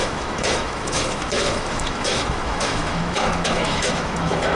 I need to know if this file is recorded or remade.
remade